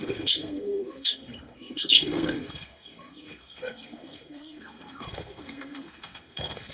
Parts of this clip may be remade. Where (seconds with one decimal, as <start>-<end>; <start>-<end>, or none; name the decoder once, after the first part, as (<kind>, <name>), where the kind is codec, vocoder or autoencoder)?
0.0-6.7 (codec, SNAC)